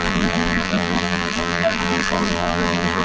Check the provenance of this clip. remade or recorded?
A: remade